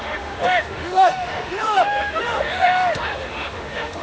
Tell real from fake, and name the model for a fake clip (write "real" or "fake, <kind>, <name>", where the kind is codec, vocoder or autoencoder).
fake, autoencoder, DAC-VAE